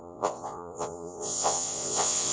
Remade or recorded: remade